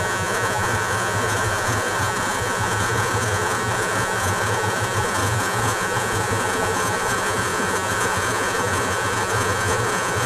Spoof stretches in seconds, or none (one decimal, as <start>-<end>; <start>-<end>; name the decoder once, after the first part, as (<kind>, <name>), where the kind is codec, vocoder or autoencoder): 0.0-10.3 (vocoder, Vocos)

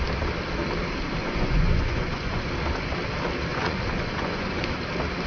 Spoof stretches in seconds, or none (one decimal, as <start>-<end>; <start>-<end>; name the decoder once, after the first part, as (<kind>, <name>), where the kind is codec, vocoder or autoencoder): 1.2-2.5 (vocoder, Vocos); 3.5-4.6

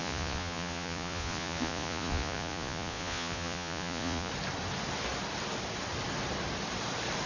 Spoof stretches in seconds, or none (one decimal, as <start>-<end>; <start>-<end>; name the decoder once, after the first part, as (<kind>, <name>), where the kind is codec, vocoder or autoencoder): 0.0-4.3 (vocoder, Vocos)

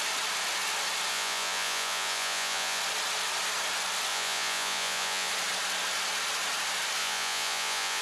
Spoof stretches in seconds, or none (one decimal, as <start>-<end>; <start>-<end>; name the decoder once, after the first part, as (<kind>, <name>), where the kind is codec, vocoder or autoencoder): 1.1-2.8 (vocoder, Vocos); 4.1-5.3; 7.0-8.0

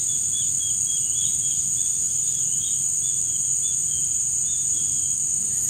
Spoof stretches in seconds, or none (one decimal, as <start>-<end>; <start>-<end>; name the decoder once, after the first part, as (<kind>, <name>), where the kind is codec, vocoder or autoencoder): 3.9-4.8 (vocoder, Vocos)

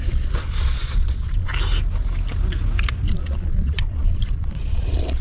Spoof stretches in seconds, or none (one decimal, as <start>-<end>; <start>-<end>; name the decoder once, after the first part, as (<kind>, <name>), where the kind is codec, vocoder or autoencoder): 0.0-1.5 (vocoder, Vocos); 3.1-5.2